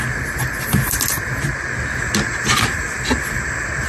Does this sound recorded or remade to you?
recorded